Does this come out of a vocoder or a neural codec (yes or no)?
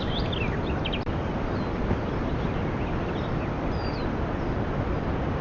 no